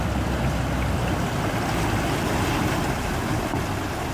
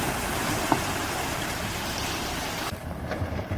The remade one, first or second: second